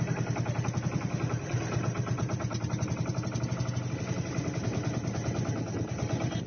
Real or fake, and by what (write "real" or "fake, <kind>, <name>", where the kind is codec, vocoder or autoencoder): real